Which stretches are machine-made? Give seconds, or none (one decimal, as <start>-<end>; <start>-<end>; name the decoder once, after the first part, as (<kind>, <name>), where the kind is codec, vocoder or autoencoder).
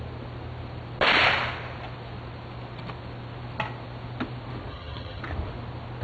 4.7-5.2 (vocoder, HiFi-GAN)